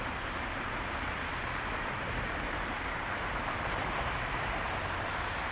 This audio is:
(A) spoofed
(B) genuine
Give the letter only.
A